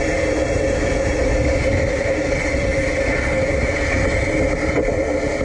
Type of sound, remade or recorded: recorded